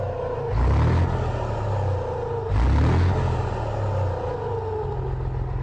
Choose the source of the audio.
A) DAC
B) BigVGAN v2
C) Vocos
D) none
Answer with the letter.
D